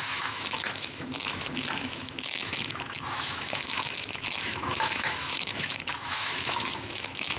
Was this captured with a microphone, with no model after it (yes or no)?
no